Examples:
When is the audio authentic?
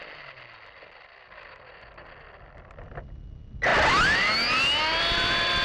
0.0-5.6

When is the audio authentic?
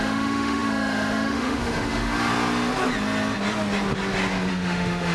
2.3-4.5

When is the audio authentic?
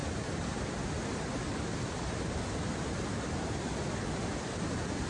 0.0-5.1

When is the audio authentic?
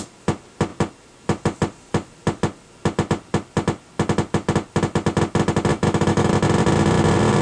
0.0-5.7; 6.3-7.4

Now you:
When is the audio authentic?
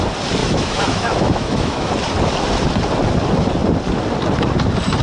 0.0-0.4; 1.9-5.0